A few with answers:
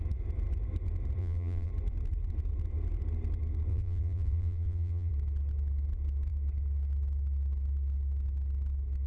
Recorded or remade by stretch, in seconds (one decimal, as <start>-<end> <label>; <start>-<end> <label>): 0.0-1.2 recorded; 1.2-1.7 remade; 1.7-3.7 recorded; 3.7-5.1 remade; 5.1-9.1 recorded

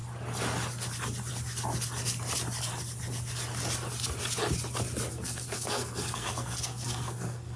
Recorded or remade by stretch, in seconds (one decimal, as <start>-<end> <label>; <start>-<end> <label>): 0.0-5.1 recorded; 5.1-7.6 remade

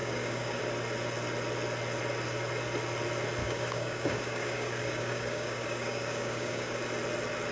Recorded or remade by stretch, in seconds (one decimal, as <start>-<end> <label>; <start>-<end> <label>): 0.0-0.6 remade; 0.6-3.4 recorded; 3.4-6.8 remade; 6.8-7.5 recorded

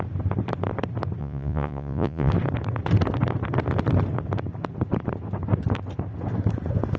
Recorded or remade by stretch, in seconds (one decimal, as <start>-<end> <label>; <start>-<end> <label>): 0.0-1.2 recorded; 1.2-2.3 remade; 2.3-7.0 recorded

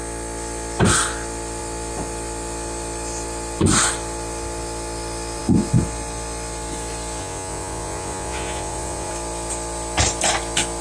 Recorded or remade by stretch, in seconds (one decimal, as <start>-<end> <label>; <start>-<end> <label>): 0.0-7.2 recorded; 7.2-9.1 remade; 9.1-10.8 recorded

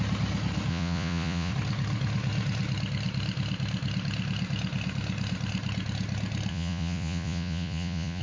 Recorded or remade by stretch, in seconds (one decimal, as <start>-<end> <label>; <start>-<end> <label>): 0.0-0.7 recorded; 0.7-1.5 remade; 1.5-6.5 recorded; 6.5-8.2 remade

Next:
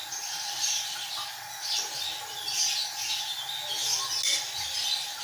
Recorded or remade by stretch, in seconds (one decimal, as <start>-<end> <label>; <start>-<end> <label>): 0.0-5.2 recorded